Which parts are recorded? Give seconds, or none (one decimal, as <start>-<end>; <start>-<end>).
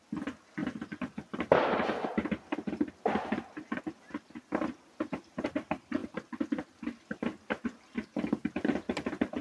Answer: 0.0-9.4